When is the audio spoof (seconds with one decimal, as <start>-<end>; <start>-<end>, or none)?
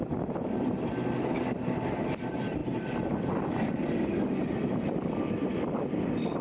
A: none